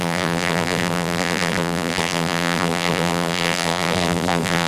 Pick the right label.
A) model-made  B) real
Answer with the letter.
A